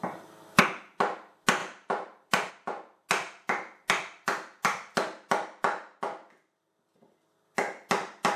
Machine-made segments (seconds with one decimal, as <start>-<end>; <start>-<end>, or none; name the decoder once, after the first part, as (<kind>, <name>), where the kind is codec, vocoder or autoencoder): 1.6-2.5 (vocoder, BigVGAN v2)